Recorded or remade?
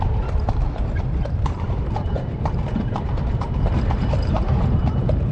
remade